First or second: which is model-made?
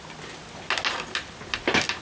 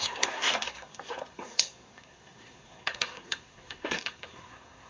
second